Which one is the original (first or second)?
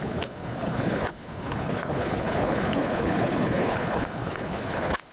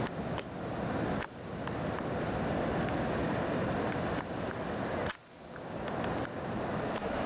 second